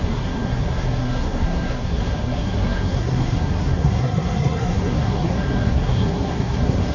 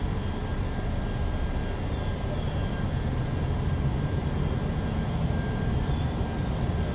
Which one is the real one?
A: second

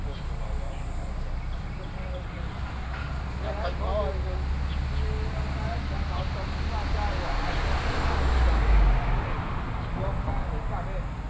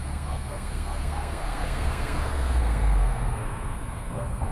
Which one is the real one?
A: first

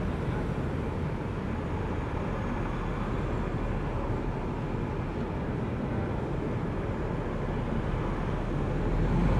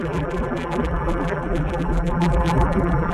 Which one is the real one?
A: first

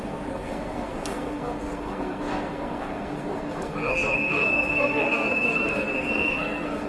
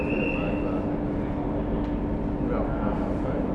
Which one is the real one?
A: second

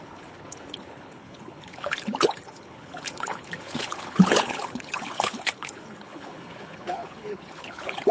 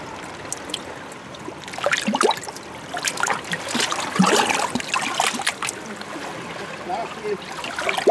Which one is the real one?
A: second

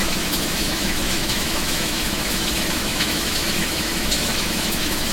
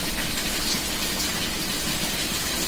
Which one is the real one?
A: second